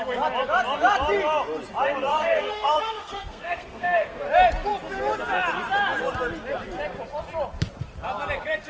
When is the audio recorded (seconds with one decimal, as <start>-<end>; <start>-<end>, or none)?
0.0-2.1; 4.2-8.7